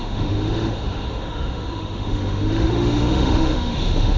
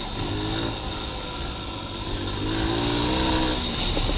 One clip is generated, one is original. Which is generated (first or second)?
first